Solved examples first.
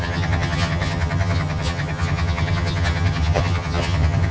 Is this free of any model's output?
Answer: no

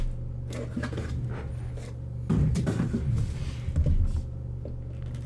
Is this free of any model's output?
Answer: yes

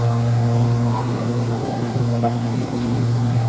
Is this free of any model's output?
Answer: no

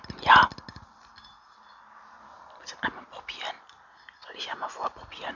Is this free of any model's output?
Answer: yes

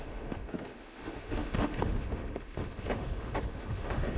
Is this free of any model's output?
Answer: no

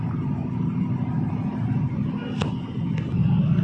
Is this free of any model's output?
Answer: yes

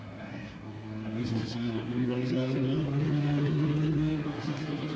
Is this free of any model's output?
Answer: no